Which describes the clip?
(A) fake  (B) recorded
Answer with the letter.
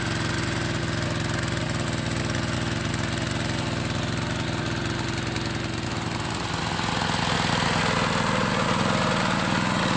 B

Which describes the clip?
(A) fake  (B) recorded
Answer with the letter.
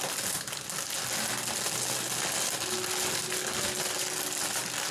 B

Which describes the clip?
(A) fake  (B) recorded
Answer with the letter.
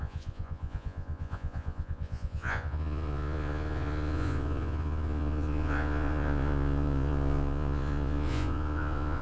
A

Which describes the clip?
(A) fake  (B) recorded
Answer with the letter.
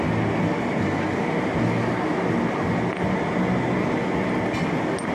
B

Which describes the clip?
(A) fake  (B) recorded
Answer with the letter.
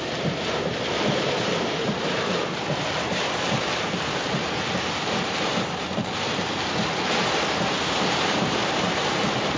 A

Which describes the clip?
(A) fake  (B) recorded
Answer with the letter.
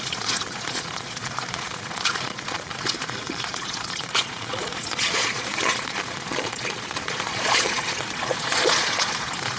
A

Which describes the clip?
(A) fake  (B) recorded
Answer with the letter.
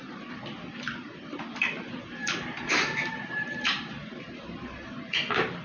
A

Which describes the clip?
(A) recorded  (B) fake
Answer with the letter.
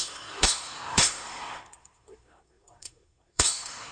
B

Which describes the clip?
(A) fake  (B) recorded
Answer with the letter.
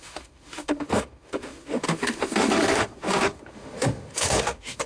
A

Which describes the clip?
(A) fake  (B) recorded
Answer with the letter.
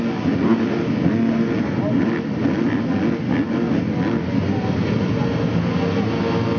B